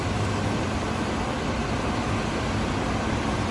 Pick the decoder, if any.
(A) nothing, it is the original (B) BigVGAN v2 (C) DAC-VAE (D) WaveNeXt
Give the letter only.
A